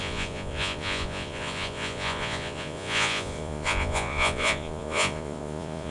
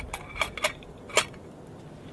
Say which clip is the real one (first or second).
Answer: second